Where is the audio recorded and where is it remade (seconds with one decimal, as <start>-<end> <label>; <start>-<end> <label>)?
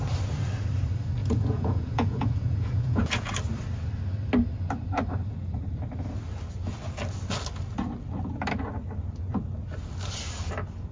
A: 0.0-1.2 recorded; 1.2-3.3 remade; 3.3-10.9 recorded